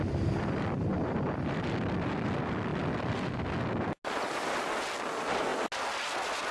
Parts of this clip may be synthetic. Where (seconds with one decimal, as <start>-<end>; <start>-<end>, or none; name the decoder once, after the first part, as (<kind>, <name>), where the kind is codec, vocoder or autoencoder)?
none